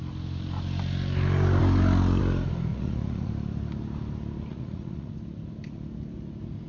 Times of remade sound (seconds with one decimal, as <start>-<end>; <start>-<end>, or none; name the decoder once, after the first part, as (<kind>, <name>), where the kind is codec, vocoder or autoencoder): 2.7-3.3 (vocoder, Vocos); 4.5-5.1